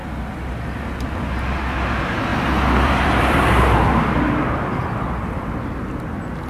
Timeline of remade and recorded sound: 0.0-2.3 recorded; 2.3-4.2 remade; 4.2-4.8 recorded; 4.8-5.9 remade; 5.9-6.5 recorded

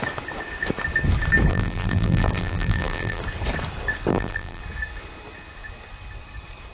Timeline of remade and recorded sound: 0.0-1.5 recorded; 1.5-3.2 remade; 3.2-4.1 recorded; 4.1-4.6 remade; 4.6-6.7 recorded

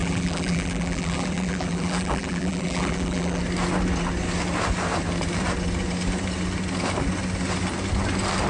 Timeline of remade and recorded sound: 0.0-3.4 remade; 3.4-8.5 recorded

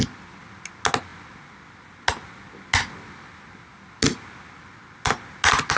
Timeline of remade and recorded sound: 0.0-5.8 recorded

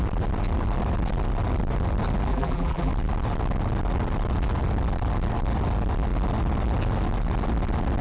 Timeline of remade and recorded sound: 0.0-2.3 recorded; 2.3-2.9 remade; 2.9-8.0 recorded

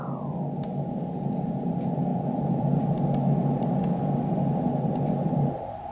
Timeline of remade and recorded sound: 0.0-2.1 recorded; 2.1-2.8 remade; 2.8-5.9 recorded

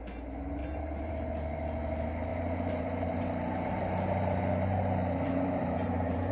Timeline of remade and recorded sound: 0.0-0.6 recorded; 0.6-1.1 remade; 1.1-2.3 recorded; 2.3-6.3 remade

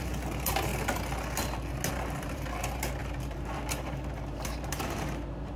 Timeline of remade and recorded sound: 0.0-0.7 remade; 0.7-1.9 recorded; 1.9-5.6 remade